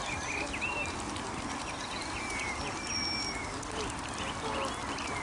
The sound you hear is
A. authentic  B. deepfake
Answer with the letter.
A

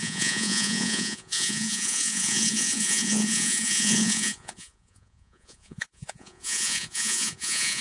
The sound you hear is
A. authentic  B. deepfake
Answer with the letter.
B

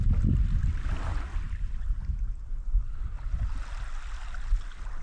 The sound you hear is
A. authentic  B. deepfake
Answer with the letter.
A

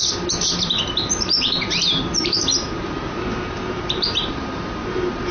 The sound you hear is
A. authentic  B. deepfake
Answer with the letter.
B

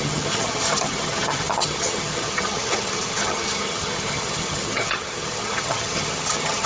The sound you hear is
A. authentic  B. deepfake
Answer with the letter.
B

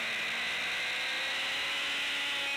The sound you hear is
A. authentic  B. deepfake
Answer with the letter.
A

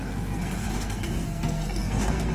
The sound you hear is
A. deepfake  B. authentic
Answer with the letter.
A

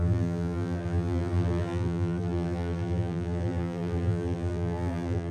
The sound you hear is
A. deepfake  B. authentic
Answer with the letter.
A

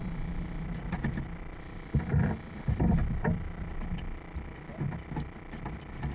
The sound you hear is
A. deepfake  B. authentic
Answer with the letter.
A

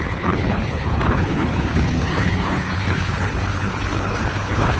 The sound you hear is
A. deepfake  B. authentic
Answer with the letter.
A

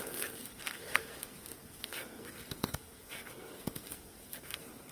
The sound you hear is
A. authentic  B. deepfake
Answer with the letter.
B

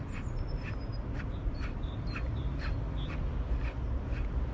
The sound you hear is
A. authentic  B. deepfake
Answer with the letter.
A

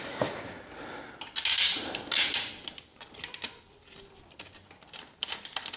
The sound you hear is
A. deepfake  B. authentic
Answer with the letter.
B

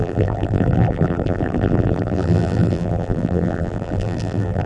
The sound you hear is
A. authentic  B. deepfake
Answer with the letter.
B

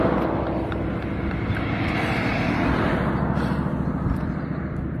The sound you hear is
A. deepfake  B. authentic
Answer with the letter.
B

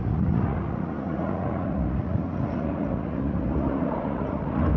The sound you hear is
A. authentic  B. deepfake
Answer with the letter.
B